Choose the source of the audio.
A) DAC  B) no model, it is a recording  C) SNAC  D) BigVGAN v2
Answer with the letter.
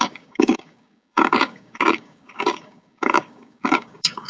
A